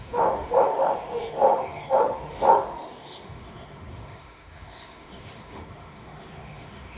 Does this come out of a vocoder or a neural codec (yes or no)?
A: yes